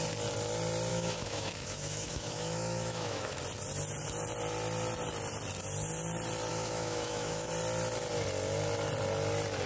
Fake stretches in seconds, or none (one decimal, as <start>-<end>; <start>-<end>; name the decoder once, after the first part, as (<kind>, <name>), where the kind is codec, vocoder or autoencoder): 0.9-3.4 (autoencoder, DAC-VAE); 6.5-7.5